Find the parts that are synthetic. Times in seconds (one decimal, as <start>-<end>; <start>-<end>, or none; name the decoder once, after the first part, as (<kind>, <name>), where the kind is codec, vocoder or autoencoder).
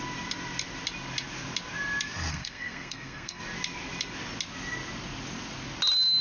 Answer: 2.3-3.4 (codec, SNAC)